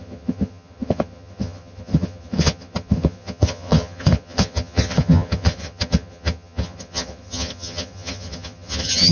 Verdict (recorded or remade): remade